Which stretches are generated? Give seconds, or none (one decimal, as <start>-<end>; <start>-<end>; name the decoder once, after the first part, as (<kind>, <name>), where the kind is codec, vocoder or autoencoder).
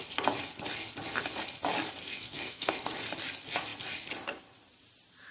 2.0-2.7 (codec, SNAC)